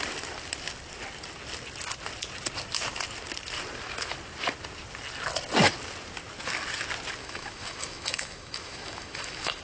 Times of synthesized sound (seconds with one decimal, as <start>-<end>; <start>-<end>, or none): 7.2-9.6